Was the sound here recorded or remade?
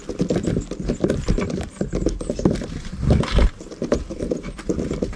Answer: remade